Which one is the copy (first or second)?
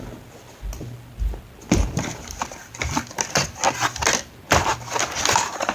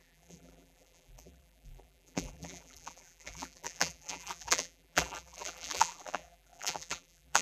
second